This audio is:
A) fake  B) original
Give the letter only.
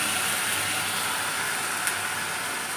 B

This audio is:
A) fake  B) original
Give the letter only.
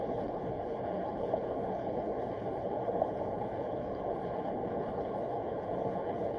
A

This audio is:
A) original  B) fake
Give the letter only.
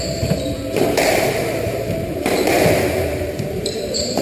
B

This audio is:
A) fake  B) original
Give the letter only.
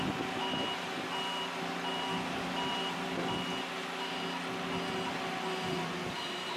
B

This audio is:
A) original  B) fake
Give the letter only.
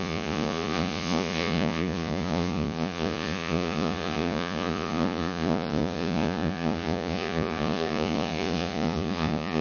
B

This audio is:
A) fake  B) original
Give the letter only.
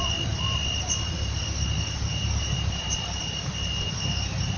B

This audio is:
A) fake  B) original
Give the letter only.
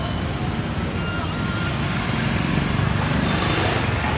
B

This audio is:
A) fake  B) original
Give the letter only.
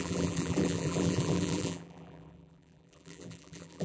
A